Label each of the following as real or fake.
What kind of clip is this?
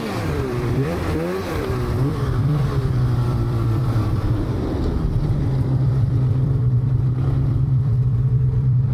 fake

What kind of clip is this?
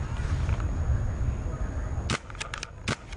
real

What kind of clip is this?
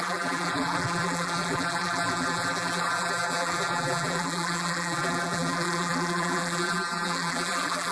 fake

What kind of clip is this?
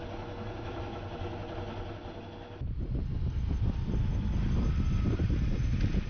real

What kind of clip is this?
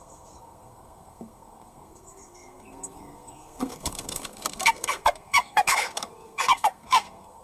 fake